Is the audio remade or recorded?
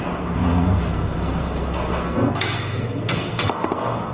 remade